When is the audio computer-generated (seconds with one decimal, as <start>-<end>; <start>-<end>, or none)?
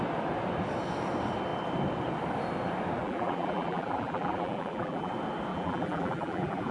3.0-5.1; 5.5-6.7